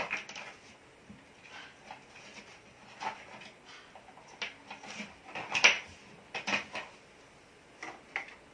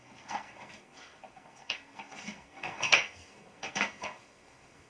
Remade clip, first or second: second